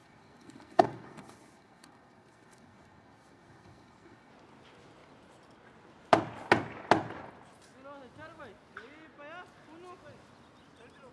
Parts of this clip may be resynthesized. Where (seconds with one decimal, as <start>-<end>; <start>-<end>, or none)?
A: 0.0-4.3